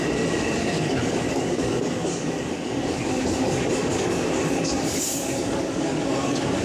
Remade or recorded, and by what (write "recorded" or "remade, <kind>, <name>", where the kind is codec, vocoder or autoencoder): remade, codec, DAC